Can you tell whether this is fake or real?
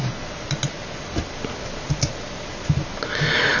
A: real